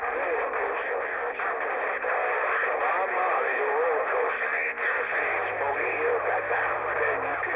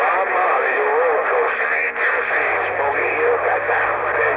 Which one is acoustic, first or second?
second